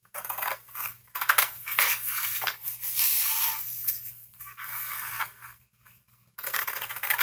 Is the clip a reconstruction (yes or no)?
yes